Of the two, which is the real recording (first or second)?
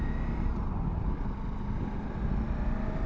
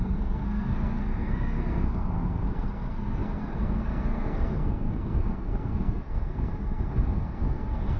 first